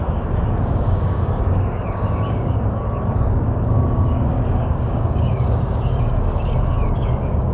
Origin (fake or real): fake